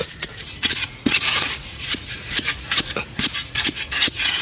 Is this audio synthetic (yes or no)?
yes